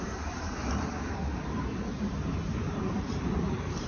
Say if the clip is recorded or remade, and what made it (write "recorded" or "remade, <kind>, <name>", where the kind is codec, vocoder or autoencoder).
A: remade, vocoder, BigVGAN v2